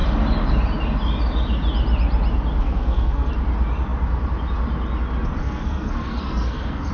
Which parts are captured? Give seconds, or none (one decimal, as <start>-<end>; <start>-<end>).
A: 0.0-2.6; 3.3-5.4